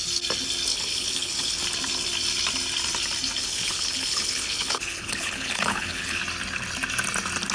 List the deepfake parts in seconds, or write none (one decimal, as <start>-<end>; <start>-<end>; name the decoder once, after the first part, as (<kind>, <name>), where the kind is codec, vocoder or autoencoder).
0.7-1.6 (codec, HILCodec); 3.4-6.2